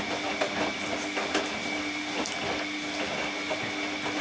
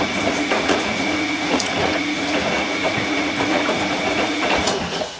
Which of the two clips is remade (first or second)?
second